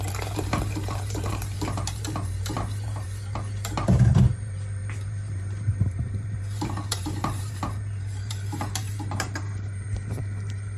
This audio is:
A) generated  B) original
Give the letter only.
A